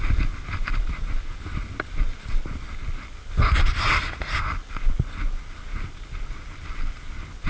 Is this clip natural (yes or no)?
yes